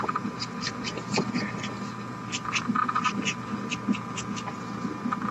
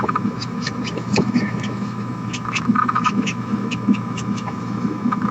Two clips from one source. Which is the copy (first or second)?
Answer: second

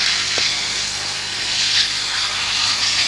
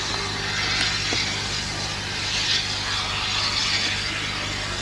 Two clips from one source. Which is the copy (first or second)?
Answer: first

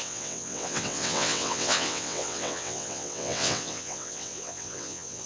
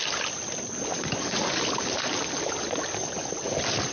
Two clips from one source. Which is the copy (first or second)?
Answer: first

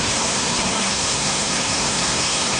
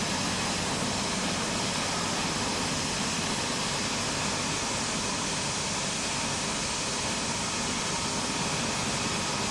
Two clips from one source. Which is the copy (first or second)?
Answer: first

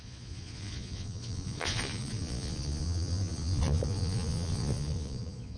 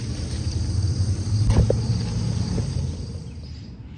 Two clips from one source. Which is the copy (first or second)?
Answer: first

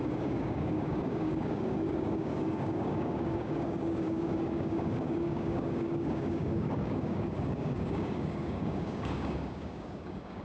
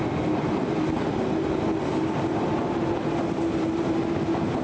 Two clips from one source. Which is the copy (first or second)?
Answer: first